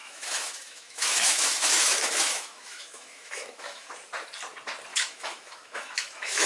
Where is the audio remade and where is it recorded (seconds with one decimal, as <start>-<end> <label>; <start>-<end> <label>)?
0.0-3.9 remade; 3.9-4.9 recorded; 4.9-6.5 remade